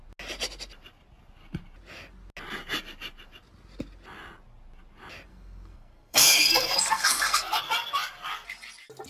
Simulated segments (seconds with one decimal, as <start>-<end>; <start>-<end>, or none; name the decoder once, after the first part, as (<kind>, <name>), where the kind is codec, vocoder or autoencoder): 5.3-7.6 (codec, SNAC)